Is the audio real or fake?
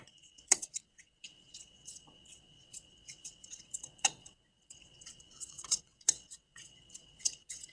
fake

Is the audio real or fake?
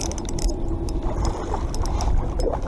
real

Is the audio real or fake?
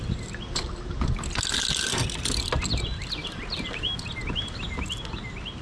real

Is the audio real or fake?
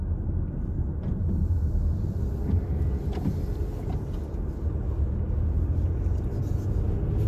real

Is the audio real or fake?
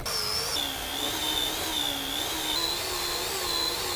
real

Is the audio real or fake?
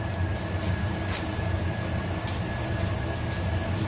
fake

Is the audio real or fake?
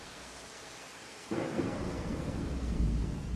fake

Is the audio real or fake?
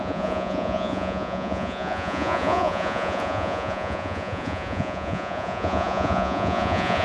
fake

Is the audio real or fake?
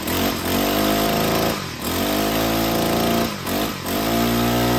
real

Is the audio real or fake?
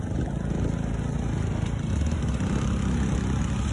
real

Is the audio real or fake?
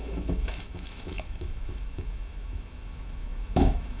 fake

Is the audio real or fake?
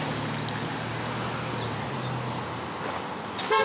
real